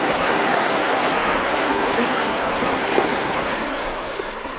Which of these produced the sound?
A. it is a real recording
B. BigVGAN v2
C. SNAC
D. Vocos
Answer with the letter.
C